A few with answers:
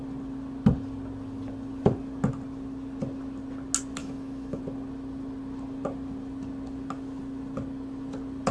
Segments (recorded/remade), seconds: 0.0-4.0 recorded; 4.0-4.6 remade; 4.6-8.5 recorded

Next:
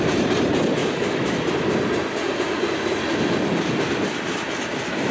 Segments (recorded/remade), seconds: 0.0-0.8 recorded; 0.8-1.4 remade; 1.4-5.1 recorded

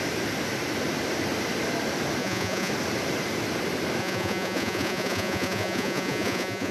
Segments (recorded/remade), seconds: 0.0-2.2 recorded; 2.2-2.7 remade; 2.7-4.0 recorded; 4.0-6.7 remade